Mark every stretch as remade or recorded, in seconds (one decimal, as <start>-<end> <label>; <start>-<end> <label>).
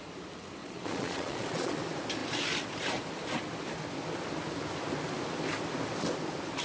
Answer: 0.0-0.6 recorded; 0.6-1.8 remade; 1.8-6.6 recorded